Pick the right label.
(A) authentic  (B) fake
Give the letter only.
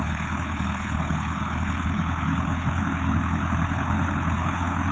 B